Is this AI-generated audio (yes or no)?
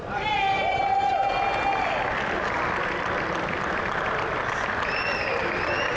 no